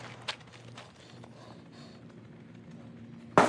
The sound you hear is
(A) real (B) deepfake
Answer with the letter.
A